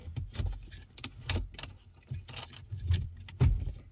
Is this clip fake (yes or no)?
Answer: no